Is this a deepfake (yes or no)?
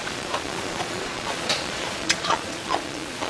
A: yes